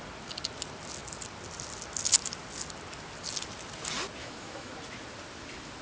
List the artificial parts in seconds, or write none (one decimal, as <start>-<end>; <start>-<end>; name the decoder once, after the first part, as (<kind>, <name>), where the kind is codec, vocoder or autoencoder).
4.2-4.7 (autoencoder, DAC-VAE)